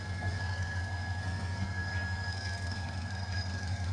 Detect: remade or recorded remade